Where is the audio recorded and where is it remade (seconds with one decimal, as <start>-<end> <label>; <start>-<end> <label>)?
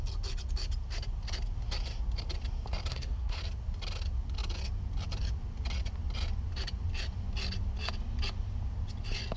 0.0-2.9 recorded; 2.9-3.4 remade; 3.4-9.4 recorded